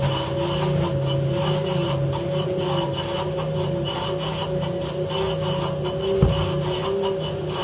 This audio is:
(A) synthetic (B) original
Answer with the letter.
B